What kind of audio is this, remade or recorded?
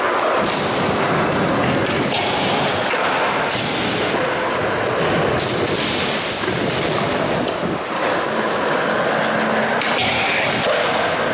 recorded